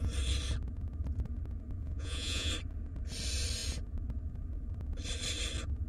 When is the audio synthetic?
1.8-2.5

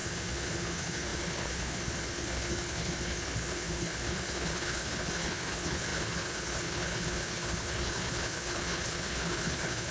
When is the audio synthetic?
0.0-9.9

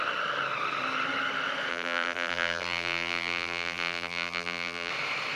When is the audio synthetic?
1.7-4.9